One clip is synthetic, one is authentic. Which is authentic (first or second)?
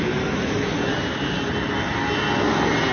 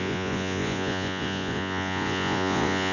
first